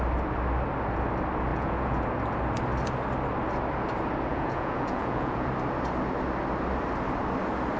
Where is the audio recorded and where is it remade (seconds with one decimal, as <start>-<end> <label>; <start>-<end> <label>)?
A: 0.0-1.5 recorded; 1.5-2.0 remade; 2.0-4.3 recorded; 4.3-5.5 remade; 5.5-7.8 recorded